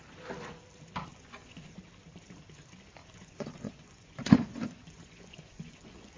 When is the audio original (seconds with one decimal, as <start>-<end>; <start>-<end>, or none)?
0.0-1.1; 1.7-3.0